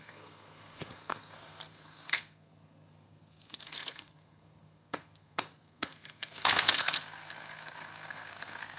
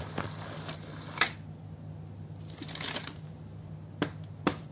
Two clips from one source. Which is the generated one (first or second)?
first